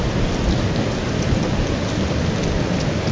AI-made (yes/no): no